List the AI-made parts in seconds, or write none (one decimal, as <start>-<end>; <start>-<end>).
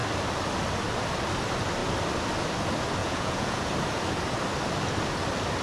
3.0-3.7